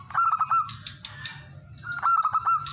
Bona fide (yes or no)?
yes